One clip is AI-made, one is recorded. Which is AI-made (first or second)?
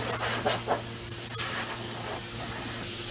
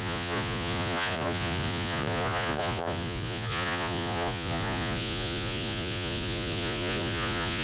second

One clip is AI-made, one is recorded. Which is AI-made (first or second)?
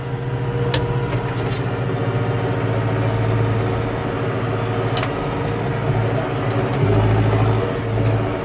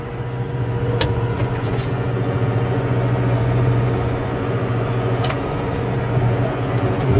second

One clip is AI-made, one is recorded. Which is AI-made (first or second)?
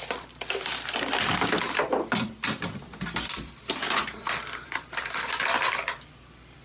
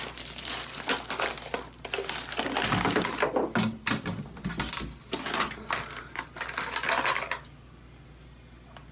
first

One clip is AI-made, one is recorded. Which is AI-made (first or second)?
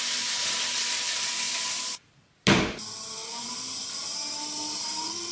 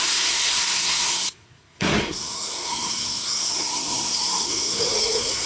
second